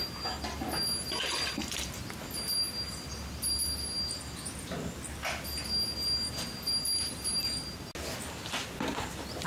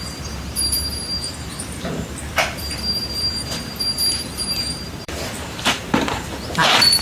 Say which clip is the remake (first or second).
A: second